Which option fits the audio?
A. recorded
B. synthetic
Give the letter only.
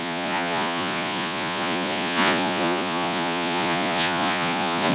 B